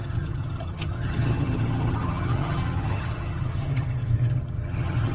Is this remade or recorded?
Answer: remade